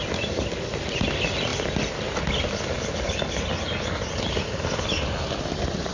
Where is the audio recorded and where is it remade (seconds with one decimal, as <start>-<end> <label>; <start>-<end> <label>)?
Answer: 0.0-5.9 recorded